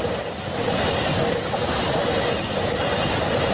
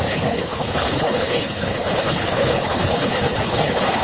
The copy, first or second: second